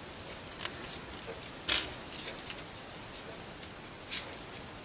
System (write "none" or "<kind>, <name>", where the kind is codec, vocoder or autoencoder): none